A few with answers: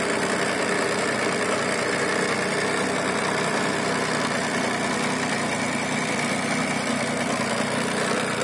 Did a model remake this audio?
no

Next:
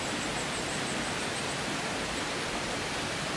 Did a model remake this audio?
no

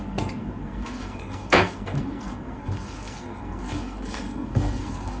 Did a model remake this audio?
yes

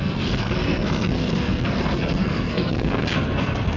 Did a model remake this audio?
yes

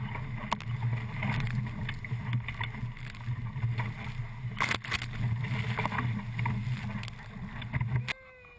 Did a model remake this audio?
no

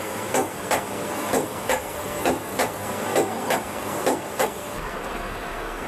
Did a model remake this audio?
yes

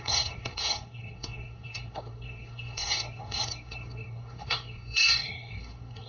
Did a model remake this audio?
yes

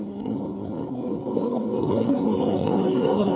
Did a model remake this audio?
yes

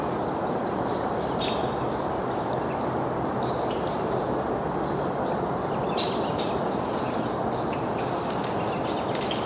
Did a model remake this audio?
no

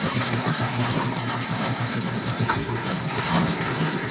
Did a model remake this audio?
yes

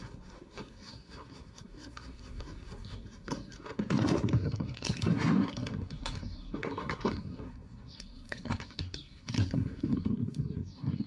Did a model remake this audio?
yes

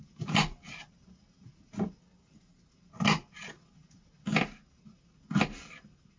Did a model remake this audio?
no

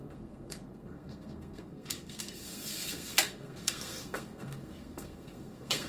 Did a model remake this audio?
yes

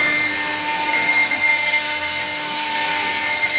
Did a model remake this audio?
yes